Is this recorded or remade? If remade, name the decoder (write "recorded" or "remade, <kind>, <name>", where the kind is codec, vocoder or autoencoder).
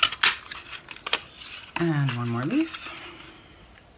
recorded